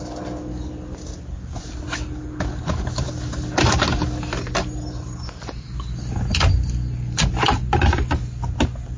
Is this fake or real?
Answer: real